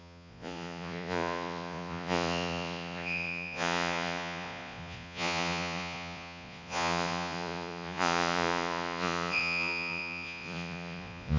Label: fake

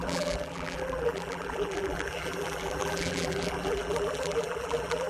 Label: fake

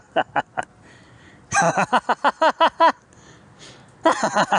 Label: real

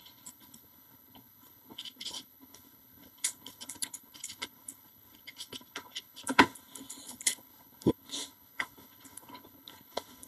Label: fake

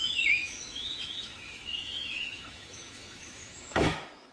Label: fake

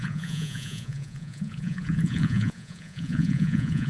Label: fake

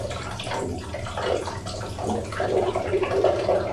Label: real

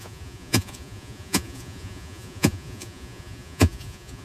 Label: fake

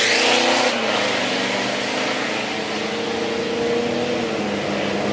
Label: real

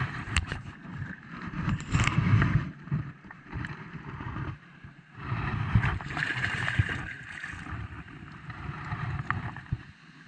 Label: fake